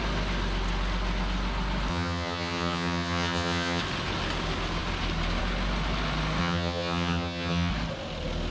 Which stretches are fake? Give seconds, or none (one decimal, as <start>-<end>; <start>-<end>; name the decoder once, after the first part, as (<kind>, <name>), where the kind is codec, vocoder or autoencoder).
1.9-3.8 (vocoder, HiFi-GAN); 6.4-7.7